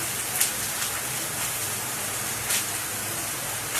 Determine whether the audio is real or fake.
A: real